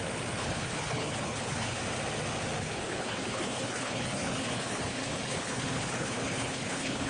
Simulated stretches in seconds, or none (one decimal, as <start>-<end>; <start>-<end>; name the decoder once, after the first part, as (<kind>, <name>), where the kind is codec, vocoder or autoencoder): 0.4-1.8 (codec, HILCodec); 2.6-7.1